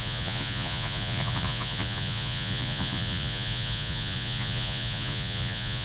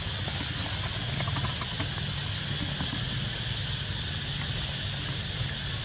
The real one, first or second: second